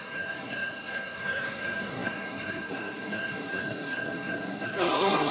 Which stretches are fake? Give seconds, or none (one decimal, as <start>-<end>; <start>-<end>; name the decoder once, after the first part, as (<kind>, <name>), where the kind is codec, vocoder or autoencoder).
0.0-5.3 (codec, SNAC)